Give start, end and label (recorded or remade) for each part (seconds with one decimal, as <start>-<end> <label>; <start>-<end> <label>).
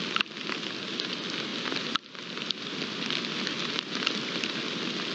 0.0-5.1 recorded